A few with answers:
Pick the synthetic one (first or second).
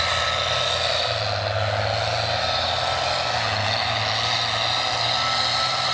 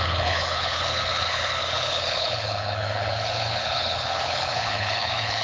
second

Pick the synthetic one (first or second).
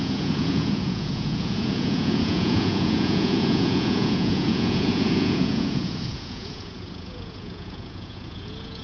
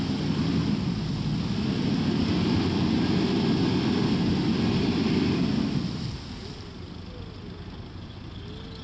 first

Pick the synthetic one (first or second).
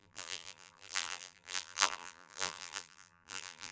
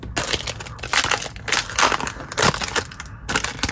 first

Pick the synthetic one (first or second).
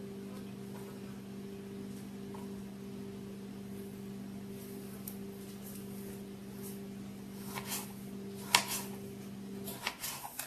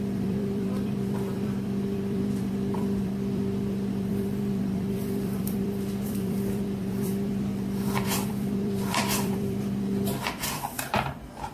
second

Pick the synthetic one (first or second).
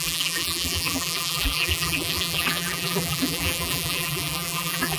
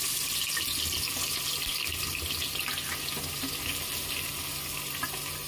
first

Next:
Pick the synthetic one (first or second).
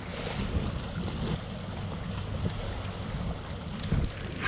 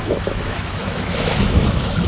second